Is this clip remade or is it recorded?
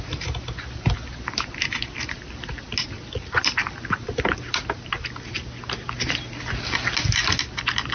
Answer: recorded